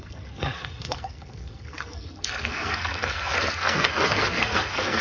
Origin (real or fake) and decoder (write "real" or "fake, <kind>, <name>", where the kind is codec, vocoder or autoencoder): fake, codec, SNAC